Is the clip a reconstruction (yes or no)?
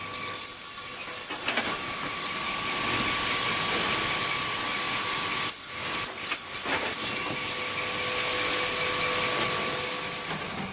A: no